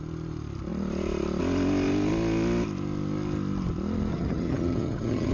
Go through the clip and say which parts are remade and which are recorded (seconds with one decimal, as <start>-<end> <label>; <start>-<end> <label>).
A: 0.0-4.1 recorded; 4.1-5.3 remade